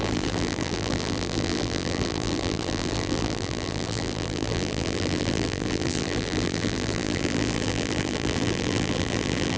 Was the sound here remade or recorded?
remade